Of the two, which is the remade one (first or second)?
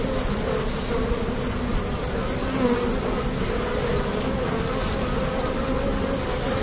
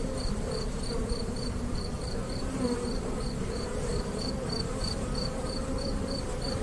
second